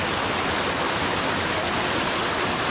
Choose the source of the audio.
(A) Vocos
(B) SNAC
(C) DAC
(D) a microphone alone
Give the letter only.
D